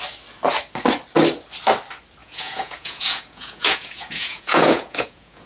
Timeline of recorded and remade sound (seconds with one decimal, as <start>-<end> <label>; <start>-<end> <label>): 0.0-2.2 recorded; 2.2-5.5 remade